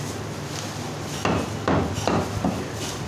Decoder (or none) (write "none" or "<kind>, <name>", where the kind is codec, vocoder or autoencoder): none